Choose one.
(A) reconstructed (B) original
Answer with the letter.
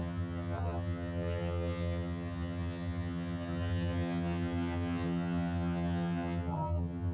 A